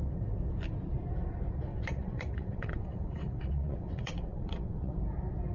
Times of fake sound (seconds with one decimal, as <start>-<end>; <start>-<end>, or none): 1.7-5.0